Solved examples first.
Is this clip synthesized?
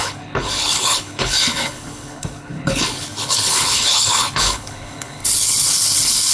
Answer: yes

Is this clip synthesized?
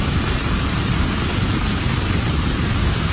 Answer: yes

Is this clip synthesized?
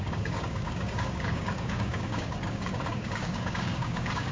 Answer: yes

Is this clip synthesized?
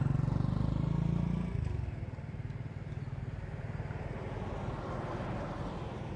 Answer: no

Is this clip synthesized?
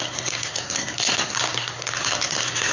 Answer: yes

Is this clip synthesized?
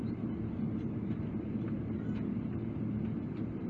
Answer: yes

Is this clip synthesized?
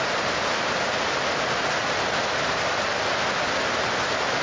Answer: no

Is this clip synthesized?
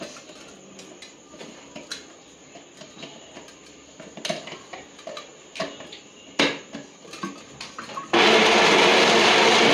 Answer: no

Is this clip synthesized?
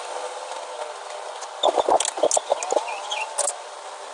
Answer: no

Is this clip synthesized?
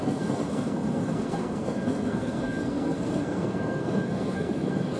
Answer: yes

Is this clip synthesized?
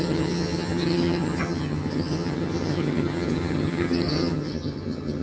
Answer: yes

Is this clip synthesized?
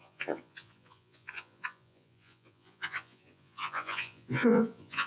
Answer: yes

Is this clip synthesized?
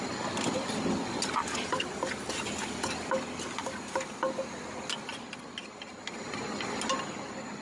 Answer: no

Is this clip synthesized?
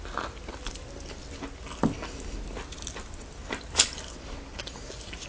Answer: no